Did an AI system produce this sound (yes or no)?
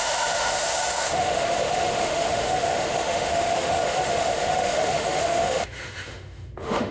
yes